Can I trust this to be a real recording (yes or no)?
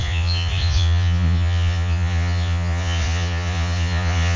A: no